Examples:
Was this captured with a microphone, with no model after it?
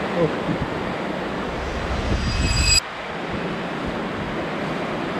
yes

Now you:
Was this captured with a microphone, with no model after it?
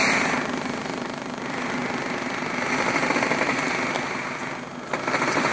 yes